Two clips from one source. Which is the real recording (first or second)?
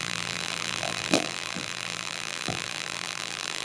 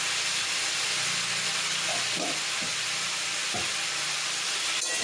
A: second